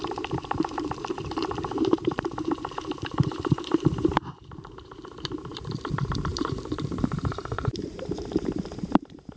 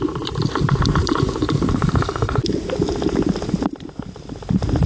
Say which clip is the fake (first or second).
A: first